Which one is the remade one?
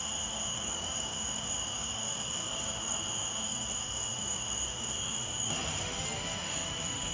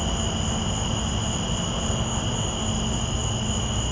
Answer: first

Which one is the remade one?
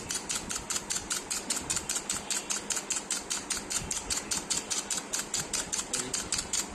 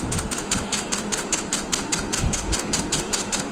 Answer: second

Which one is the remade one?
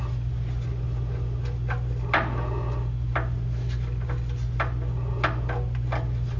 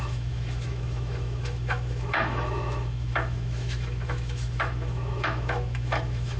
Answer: second